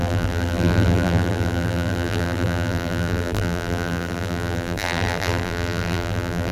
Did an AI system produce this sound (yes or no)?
yes